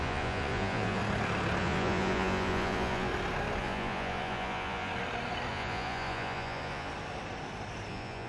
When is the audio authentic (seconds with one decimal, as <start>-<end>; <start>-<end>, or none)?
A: 1.0-1.6; 3.1-3.6; 4.9-5.5; 6.9-7.9

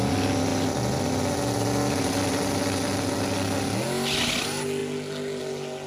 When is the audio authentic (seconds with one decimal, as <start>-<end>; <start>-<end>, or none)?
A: 0.0-5.9

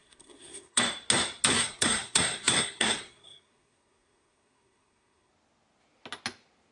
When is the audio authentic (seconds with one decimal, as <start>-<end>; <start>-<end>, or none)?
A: 0.8-1.5; 5.3-6.7

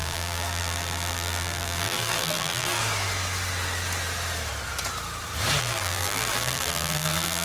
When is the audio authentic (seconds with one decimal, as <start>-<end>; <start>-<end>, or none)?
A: 2.8-5.6